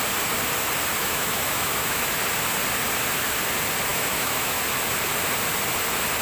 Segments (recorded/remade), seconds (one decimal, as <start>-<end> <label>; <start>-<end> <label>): 0.0-1.0 recorded; 1.0-2.1 remade; 2.1-3.9 recorded; 3.9-4.6 remade; 4.6-6.2 recorded